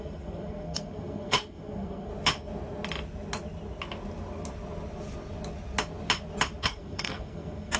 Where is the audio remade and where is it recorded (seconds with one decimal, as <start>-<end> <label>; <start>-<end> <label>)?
0.0-2.1 remade; 2.1-6.6 recorded; 6.6-7.8 remade

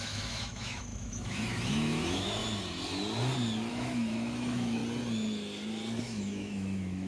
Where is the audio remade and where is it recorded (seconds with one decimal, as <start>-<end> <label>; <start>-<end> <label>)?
0.0-2.4 remade; 2.4-3.7 recorded; 3.7-4.8 remade; 4.8-6.0 recorded; 6.0-7.1 remade

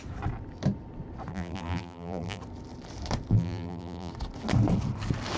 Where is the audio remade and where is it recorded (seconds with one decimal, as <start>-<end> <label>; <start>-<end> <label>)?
0.0-1.3 recorded; 1.3-2.4 remade; 2.4-3.3 recorded; 3.3-4.1 remade; 4.1-5.4 recorded

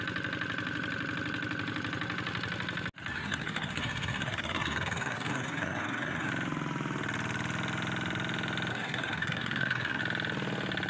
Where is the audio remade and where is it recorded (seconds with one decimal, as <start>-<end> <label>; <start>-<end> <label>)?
0.0-3.1 recorded; 3.1-6.3 remade; 6.3-8.7 recorded; 8.7-10.0 remade; 10.0-10.9 recorded

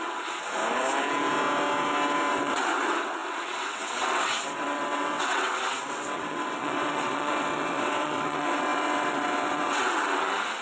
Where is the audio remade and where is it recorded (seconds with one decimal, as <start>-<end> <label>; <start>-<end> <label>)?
0.0-0.6 remade; 0.6-2.3 recorded; 2.3-10.6 remade

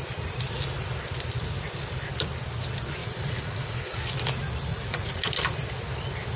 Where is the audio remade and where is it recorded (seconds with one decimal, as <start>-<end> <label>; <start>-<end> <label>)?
0.0-3.0 recorded; 3.0-4.0 remade; 4.0-4.7 recorded; 4.7-5.2 remade; 5.2-6.4 recorded

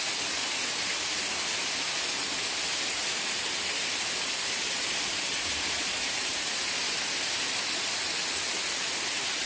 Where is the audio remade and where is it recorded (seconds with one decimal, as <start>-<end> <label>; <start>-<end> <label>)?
0.0-2.2 recorded; 2.2-6.5 remade; 6.5-9.5 recorded

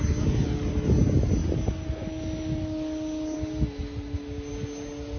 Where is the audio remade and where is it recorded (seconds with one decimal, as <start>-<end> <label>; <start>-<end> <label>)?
0.0-5.2 recorded